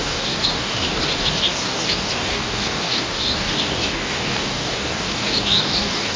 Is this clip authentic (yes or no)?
no